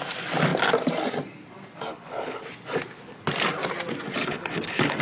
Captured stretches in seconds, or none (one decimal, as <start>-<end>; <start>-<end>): 0.0-1.9; 2.4-4.2